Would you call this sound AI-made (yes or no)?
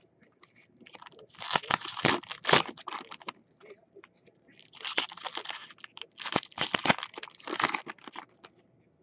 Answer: no